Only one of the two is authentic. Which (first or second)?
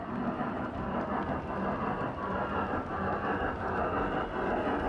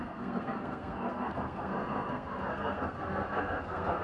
first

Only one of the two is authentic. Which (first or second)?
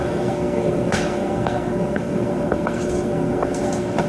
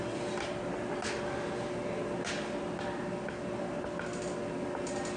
second